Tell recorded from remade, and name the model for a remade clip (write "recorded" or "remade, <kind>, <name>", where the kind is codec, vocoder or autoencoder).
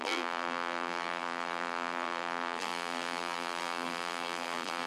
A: remade, vocoder, BigVGAN v2